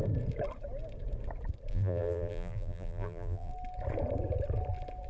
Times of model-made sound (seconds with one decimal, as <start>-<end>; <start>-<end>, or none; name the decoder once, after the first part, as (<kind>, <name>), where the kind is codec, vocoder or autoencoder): 1.7-3.5 (vocoder, BigVGAN v2)